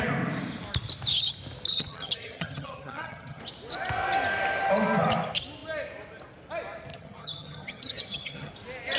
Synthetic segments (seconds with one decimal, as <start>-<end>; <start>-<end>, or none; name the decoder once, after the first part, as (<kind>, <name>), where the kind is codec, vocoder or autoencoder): 1.7-3.4 (vocoder, HiFi-GAN); 6.9-8.5